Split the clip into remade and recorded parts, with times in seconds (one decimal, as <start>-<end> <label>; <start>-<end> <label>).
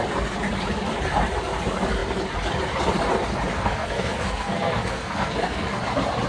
0.0-3.5 recorded; 3.5-5.8 remade; 5.8-6.3 recorded